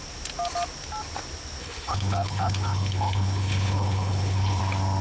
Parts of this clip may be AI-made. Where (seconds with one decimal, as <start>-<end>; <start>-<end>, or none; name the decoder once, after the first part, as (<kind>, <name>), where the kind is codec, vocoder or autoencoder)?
1.6-4.6 (codec, HILCodec)